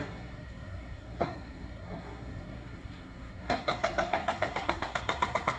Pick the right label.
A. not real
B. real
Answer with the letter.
A